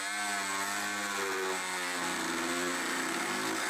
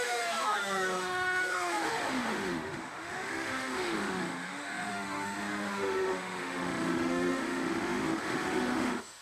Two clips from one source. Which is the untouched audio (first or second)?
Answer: first